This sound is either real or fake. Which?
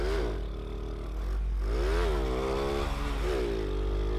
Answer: real